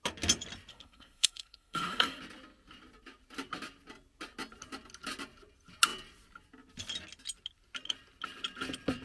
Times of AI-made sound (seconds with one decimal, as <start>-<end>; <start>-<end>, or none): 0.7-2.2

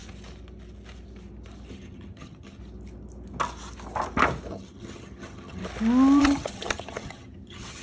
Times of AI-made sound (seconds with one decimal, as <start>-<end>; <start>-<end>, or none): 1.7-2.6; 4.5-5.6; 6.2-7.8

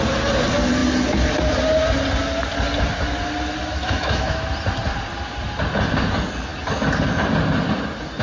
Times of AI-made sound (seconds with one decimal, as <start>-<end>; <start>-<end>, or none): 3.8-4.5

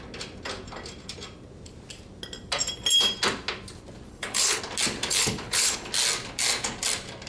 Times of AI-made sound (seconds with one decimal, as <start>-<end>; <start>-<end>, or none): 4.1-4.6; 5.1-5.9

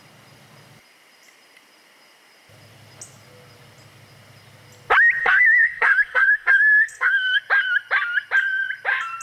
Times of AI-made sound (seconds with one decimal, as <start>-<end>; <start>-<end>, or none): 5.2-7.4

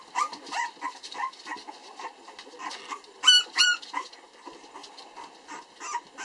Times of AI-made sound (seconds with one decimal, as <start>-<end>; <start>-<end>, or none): none

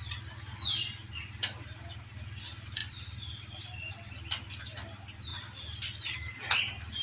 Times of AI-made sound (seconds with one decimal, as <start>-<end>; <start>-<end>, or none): 2.8-3.9

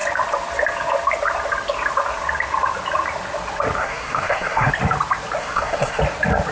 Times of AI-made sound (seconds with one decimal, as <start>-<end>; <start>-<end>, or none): 3.8-4.7; 5.4-6.0